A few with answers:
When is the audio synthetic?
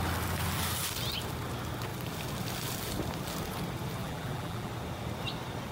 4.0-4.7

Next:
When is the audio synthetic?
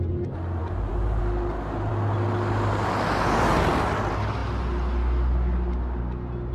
0.6-1.2